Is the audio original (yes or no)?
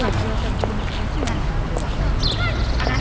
yes